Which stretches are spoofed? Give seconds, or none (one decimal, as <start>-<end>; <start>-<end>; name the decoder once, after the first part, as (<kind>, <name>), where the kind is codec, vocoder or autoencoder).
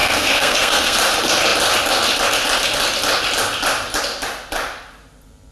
0.0-1.0 (codec, SNAC)